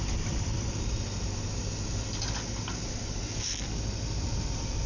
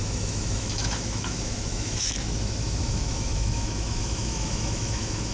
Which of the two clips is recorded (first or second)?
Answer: first